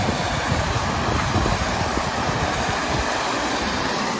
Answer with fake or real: real